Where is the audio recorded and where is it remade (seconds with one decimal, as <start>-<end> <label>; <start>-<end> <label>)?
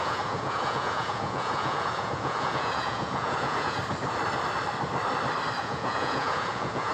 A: 0.0-3.8 remade; 3.8-5.6 recorded; 5.6-6.9 remade